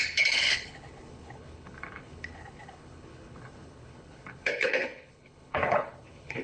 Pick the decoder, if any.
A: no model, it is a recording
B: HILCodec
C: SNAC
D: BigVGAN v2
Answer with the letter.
B